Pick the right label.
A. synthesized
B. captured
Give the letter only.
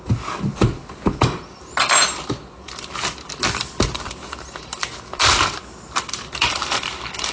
B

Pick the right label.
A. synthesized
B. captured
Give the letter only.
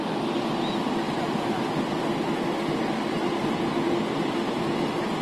B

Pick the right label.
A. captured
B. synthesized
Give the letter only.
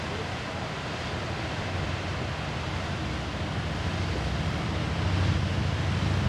A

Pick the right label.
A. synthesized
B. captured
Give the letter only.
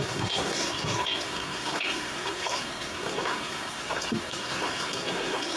A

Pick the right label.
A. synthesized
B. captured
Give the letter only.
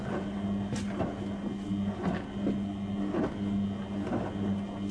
B